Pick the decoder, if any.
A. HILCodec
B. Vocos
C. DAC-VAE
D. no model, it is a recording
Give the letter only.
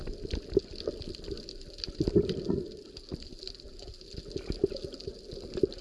D